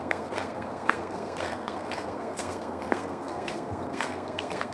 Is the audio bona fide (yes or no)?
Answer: no